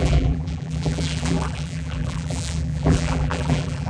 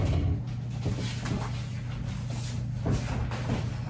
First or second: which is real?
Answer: second